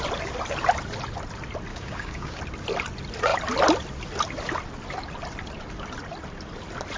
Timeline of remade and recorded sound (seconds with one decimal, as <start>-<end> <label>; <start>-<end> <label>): 0.0-1.7 recorded; 1.7-2.4 remade; 2.4-7.0 recorded